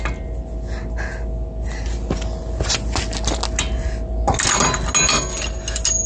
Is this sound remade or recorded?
recorded